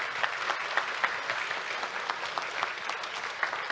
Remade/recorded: recorded